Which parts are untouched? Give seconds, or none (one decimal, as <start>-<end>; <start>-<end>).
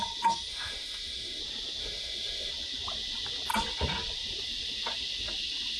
0.0-0.5; 1.4-1.8; 2.5-5.8